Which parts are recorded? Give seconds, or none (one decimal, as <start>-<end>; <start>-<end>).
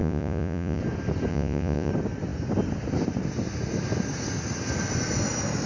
0.8-1.3; 1.9-5.7